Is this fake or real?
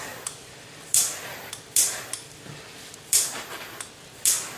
real